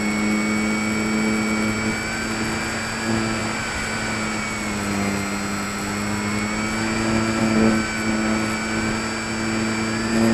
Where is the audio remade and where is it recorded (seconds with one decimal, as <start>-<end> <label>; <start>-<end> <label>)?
0.0-10.3 recorded